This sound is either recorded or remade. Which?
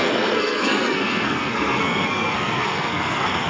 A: remade